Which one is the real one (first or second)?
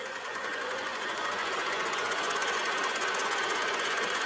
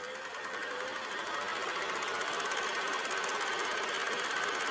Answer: second